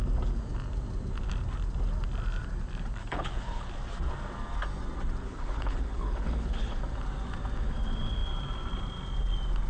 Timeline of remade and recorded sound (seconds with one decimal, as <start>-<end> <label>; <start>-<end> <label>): 0.0-3.0 recorded; 3.0-3.7 remade; 3.7-5.2 recorded; 5.2-6.8 remade; 6.8-9.7 recorded